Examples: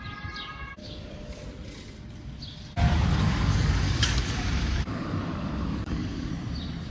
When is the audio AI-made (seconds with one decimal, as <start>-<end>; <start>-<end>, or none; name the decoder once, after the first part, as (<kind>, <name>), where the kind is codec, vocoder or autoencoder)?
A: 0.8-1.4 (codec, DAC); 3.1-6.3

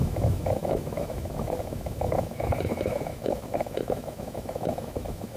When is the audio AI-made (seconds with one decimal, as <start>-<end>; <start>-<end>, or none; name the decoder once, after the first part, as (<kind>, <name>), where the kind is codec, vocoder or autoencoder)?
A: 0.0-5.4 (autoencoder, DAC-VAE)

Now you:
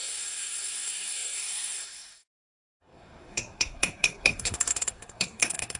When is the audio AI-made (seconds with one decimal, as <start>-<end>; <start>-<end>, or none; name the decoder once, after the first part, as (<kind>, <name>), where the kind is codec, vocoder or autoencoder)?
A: 0.0-5.8 (codec, SNAC)

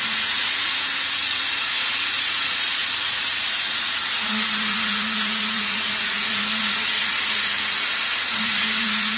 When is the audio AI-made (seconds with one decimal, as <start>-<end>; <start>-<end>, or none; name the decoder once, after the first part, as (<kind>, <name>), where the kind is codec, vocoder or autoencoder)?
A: 0.0-9.2 (vocoder, Vocos)